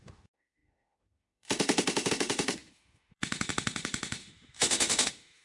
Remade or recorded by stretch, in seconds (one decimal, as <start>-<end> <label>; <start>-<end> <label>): 0.0-5.4 remade